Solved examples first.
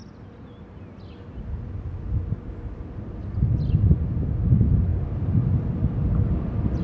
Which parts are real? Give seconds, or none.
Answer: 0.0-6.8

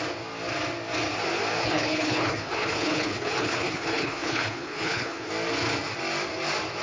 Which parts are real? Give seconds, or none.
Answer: 0.0-1.6; 5.3-6.8

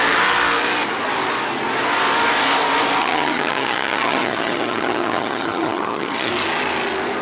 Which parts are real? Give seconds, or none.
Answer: 0.0-3.0; 6.3-7.2

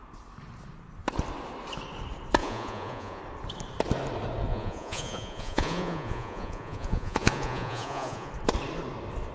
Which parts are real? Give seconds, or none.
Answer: 0.0-2.4; 3.2-4.5; 8.3-9.3

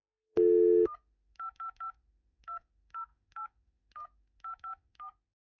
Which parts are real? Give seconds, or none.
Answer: none

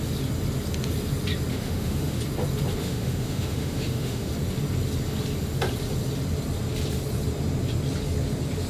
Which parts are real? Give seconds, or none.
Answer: 0.0-1.5; 2.2-2.8; 4.3-8.7